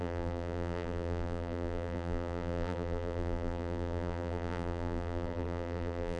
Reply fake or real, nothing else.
fake